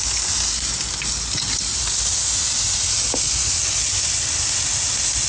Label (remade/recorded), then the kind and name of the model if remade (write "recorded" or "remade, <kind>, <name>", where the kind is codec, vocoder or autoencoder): recorded